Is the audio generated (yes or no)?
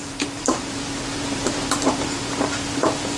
yes